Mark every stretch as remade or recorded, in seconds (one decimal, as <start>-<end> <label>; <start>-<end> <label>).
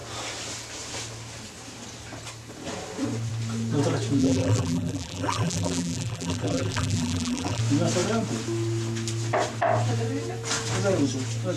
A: 0.0-4.2 recorded; 4.2-7.6 remade; 7.6-11.6 recorded